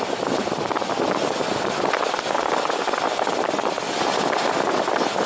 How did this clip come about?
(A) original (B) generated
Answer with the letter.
A